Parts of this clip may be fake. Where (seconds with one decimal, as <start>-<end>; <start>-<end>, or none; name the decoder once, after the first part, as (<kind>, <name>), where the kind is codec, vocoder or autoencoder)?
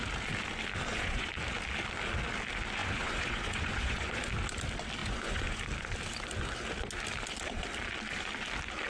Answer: 0.9-1.4 (vocoder, Vocos); 2.8-4.2; 5.0-5.6